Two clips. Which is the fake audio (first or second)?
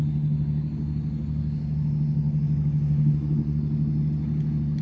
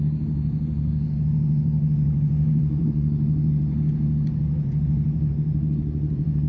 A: second